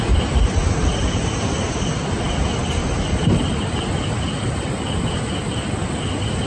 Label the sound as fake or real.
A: real